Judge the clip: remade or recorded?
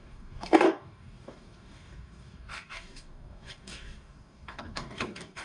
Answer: remade